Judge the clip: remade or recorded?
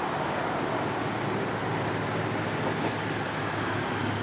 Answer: recorded